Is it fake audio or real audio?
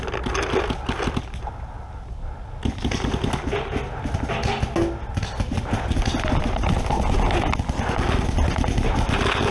real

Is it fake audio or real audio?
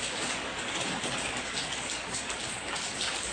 fake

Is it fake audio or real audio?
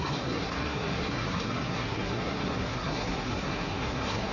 fake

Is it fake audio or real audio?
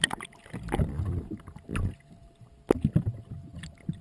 real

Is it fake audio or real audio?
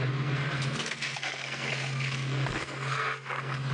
fake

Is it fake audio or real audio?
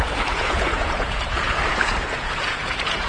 fake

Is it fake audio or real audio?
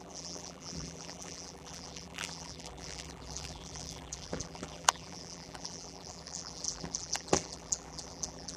fake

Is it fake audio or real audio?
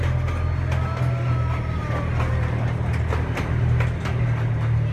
real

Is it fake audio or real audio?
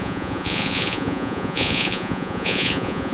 fake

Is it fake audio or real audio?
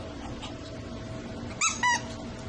real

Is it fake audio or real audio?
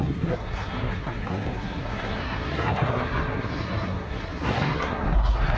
fake